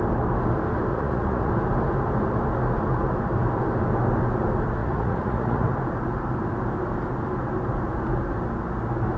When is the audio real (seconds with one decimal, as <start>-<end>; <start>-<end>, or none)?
0.0-0.9; 1.5-4.8; 5.7-9.2